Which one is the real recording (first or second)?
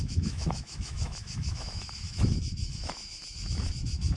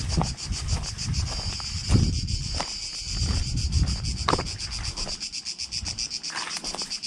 second